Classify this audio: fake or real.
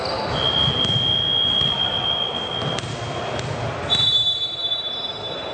real